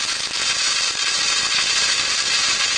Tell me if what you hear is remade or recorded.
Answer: recorded